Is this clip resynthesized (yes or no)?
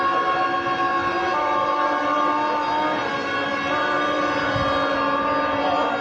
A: no